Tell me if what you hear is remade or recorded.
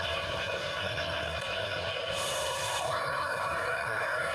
remade